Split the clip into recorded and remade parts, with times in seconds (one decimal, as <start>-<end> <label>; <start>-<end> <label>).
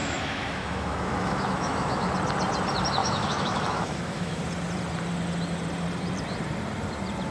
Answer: 0.0-2.1 remade; 2.1-3.0 recorded; 3.0-4.4 remade; 4.4-7.3 recorded